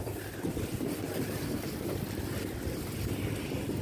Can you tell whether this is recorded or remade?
recorded